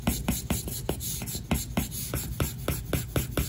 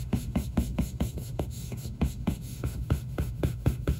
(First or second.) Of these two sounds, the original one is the first